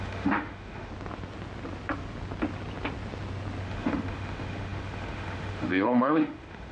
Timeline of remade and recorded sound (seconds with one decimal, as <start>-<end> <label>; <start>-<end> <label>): 0.0-0.9 remade; 0.9-3.6 recorded; 3.6-6.7 remade

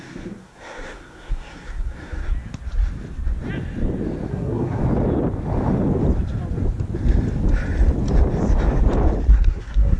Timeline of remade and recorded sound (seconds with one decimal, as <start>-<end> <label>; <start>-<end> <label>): 0.0-2.2 remade; 2.2-4.3 recorded; 4.3-4.8 remade; 4.8-9.3 recorded; 9.3-10.0 remade

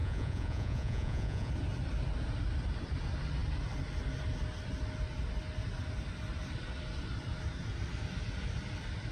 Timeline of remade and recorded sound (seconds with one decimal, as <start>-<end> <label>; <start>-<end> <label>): 0.0-1.5 remade; 1.5-9.1 recorded

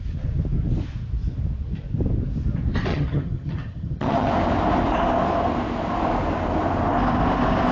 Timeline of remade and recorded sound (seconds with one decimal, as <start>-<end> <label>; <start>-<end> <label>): 0.0-2.9 recorded; 2.9-4.3 remade; 4.3-7.7 recorded